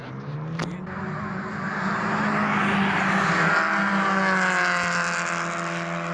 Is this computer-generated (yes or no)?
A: no